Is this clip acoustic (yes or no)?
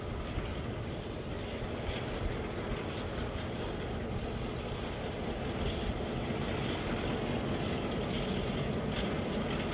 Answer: yes